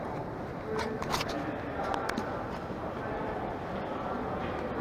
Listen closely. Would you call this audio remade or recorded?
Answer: recorded